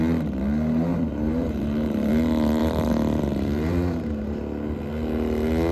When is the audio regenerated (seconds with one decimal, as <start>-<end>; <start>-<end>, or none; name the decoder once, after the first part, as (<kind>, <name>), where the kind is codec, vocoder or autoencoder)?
0.9-2.1 (vocoder, BigVGAN v2); 2.6-4.4

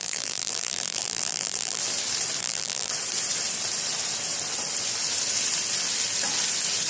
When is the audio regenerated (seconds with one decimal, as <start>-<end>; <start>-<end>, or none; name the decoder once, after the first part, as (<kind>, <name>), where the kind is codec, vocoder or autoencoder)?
0.0-1.8 (vocoder, BigVGAN v2); 2.4-2.9